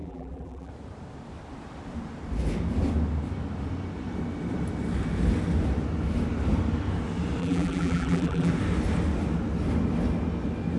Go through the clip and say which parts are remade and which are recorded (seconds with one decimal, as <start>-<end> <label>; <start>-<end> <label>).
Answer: 0.0-0.7 remade; 0.7-7.4 recorded; 7.4-8.5 remade; 8.5-10.8 recorded